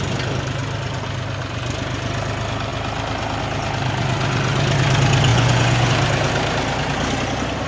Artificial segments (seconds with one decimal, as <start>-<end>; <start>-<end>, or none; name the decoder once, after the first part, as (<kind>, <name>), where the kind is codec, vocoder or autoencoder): 5.3-5.9 (vocoder, Vocos)